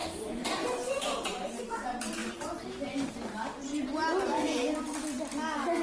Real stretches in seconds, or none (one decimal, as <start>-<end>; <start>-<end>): 1.6-5.8